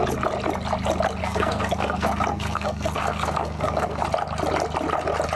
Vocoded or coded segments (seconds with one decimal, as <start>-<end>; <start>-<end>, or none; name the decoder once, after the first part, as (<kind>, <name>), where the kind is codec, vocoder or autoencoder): 1.2-4.0 (codec, SNAC)